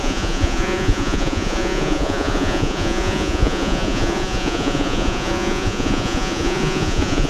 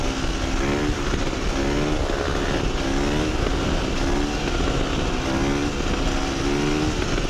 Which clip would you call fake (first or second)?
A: first